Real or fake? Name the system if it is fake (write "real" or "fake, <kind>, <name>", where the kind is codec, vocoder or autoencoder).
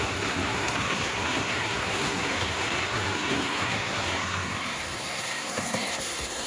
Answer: fake, codec, SNAC